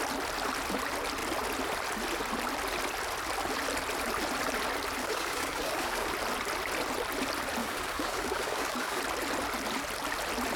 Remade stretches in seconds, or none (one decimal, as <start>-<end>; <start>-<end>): 5.0-6.1; 7.6-9.0